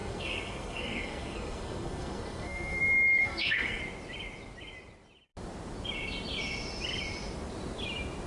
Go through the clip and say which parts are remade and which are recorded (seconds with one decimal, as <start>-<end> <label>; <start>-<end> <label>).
0.0-2.8 remade; 2.8-3.2 recorded; 3.2-3.8 remade; 3.8-8.3 recorded